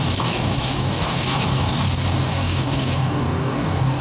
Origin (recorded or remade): remade